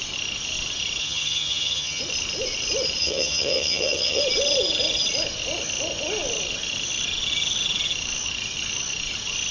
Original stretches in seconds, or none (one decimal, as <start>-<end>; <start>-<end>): 0.0-1.0; 2.0-3.0; 4.2-9.5